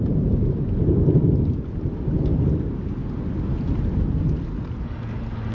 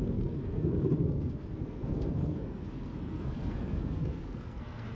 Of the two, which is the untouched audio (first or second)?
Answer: first